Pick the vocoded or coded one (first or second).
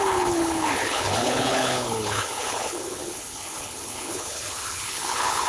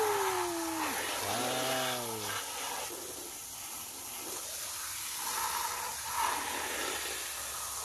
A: first